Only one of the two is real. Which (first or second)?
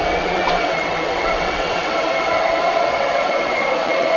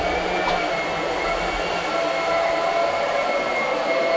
second